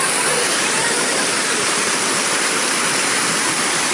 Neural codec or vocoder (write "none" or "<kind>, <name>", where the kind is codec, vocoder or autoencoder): vocoder, BigVGAN v2